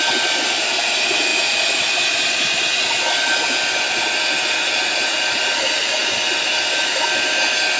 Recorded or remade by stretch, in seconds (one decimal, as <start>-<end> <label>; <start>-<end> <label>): 0.0-7.8 recorded